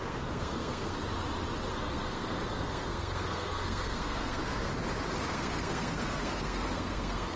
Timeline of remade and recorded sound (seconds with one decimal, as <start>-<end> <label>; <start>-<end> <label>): 0.0-1.0 remade; 1.0-1.7 recorded; 1.7-4.7 remade; 4.7-5.3 recorded; 5.3-7.4 remade